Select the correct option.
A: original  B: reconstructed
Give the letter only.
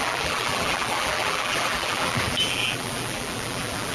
B